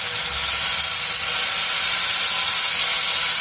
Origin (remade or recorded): recorded